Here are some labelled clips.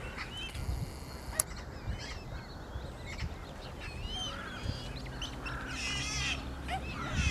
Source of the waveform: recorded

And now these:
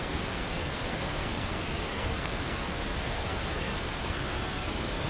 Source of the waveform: remade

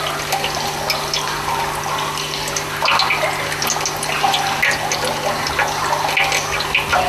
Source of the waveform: recorded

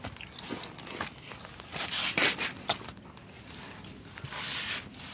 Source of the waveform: recorded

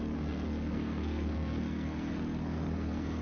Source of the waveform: remade